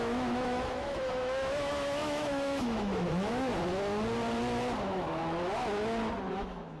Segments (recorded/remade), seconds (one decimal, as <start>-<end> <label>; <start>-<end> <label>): 0.0-3.5 remade; 3.5-4.8 recorded; 4.8-5.2 remade; 5.2-6.3 recorded; 6.3-6.8 remade